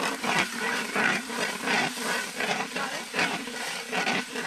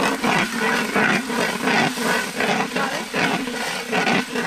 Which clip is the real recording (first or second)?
second